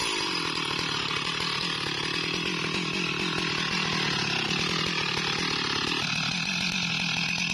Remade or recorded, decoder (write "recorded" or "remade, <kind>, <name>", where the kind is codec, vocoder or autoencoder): recorded